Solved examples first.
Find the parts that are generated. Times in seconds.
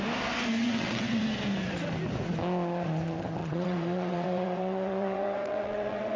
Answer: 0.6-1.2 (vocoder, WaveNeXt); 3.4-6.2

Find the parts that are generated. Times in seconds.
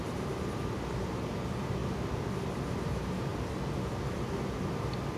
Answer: 0.0-1.8 (vocoder, BigVGAN v2); 2.8-3.3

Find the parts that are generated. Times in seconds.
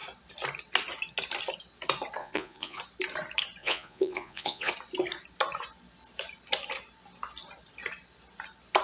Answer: 2.2-2.8 (vocoder, Vocos); 3.6-4.7